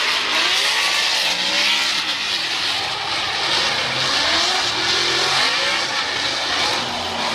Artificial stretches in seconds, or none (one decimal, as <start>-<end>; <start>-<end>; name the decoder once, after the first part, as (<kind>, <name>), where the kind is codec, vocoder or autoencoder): 1.9-3.4 (vocoder, BigVGAN v2)